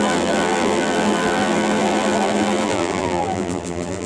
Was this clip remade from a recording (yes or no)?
yes